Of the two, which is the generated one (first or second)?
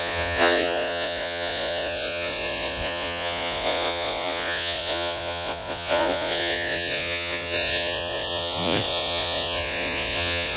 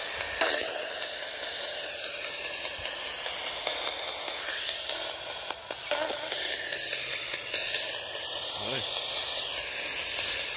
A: first